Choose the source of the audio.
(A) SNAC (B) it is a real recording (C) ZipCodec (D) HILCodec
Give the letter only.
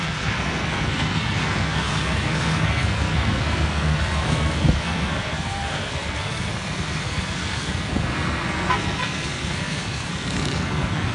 A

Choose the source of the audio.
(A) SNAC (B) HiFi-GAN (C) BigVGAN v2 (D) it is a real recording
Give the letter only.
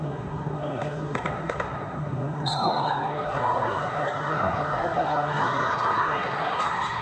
A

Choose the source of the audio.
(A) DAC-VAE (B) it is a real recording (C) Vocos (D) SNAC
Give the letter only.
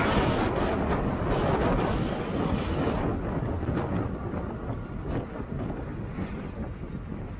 B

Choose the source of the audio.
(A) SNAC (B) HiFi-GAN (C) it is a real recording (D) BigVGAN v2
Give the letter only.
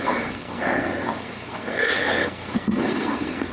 A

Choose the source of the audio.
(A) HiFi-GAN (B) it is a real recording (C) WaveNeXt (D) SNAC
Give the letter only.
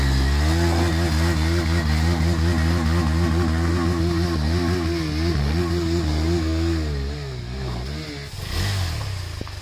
B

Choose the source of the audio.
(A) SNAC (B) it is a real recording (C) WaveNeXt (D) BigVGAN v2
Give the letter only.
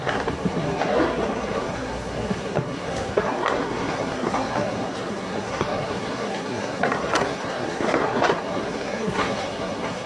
A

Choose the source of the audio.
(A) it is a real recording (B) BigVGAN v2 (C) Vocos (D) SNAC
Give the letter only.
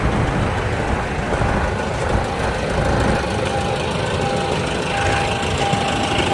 A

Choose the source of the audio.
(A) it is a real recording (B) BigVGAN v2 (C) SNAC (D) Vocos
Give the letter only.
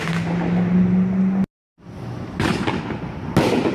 A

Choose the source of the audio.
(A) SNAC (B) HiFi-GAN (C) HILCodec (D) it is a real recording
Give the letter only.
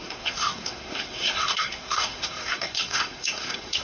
A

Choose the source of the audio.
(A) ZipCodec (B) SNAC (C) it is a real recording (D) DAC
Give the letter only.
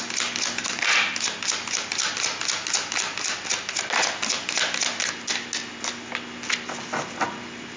C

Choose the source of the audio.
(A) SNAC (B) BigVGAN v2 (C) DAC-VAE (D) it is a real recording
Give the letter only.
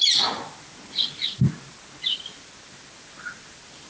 D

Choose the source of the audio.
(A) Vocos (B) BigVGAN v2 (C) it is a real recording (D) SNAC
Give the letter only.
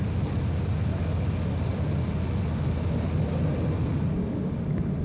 C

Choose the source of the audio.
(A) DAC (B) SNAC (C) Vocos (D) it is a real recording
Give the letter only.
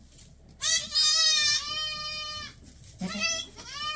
D